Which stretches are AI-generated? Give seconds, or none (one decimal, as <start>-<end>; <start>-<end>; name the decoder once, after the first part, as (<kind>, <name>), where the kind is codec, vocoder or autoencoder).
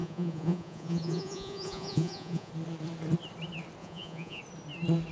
0.0-2.5 (vocoder, Vocos); 3.8-4.4